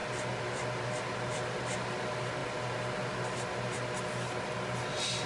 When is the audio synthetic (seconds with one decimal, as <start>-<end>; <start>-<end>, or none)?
none